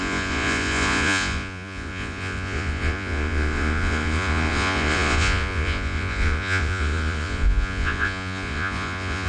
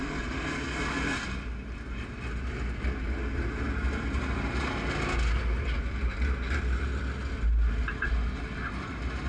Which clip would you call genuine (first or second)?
second